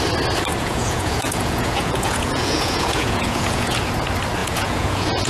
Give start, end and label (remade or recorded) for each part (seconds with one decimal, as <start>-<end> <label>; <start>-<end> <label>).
0.0-0.6 recorded; 0.6-3.8 remade; 3.8-4.4 recorded; 4.4-5.3 remade